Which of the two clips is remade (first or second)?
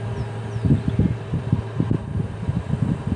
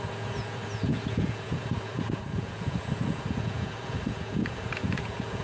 second